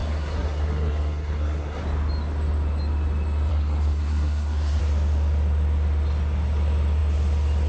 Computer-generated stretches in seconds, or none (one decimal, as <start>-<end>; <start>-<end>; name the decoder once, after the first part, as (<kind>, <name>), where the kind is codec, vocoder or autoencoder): 0.0-1.8 (codec, SNAC); 3.5-4.8